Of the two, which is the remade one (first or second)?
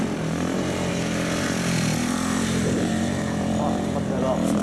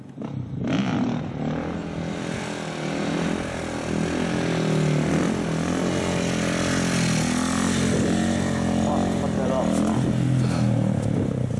first